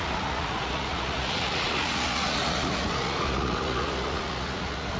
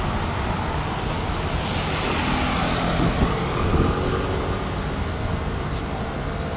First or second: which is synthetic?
first